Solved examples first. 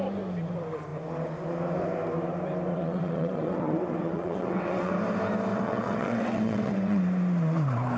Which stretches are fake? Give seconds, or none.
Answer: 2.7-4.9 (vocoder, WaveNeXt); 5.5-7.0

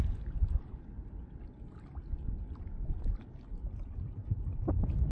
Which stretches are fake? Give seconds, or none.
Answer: none

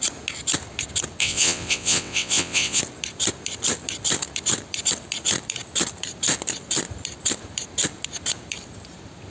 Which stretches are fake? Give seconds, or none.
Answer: 1.2-2.8 (vocoder, WaveNeXt)

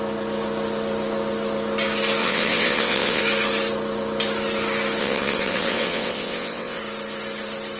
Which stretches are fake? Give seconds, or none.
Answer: 2.2-3.2 (vocoder, WaveNeXt); 5.0-6.8